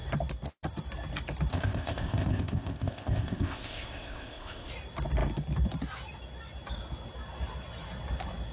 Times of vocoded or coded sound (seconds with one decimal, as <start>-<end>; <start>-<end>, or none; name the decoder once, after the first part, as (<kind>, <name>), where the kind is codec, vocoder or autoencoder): 1.5-4.7 (codec, ZipCodec)